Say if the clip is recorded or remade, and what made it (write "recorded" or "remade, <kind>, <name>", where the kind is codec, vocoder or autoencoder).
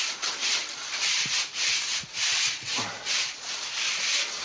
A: recorded